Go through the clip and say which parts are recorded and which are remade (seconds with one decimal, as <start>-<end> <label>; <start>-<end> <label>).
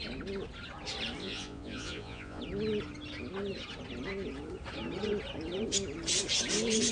0.0-1.2 recorded; 1.2-2.4 remade; 2.4-6.9 recorded